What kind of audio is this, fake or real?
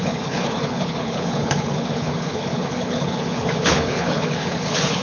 fake